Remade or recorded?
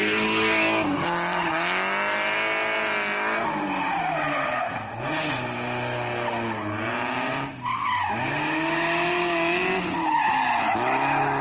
recorded